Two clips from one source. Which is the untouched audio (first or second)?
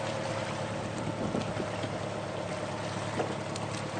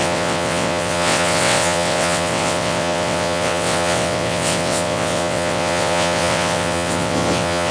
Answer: first